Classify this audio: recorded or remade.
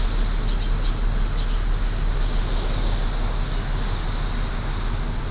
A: recorded